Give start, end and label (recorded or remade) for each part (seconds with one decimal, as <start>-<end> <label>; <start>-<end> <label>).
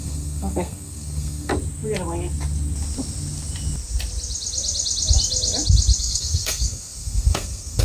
0.0-1.5 remade; 1.5-6.0 recorded; 6.0-7.8 remade